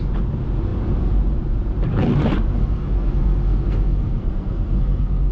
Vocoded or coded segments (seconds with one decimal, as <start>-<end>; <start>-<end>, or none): 2.6-5.3